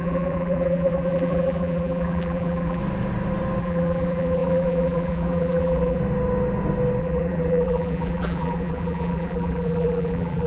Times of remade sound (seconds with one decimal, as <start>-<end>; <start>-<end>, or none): 0.0-2.8; 3.6-6.0; 7.0-10.5